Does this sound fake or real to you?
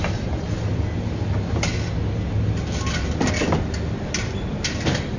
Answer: real